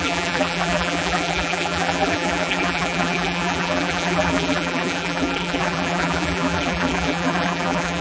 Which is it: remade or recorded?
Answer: remade